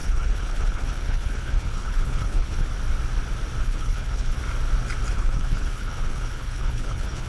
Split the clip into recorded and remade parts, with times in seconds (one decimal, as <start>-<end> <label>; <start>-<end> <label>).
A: 0.0-2.7 remade; 2.7-3.6 recorded; 3.6-4.4 remade; 4.4-5.1 recorded; 5.1-7.3 remade